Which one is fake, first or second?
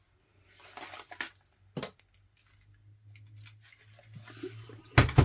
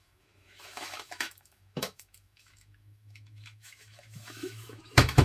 second